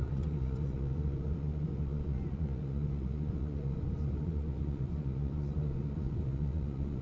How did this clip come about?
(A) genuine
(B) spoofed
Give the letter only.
B